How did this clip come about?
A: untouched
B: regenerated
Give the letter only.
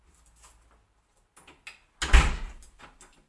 A